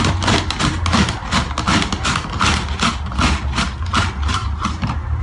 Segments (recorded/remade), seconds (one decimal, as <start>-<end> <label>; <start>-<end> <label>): 0.0-4.4 recorded; 4.4-5.2 remade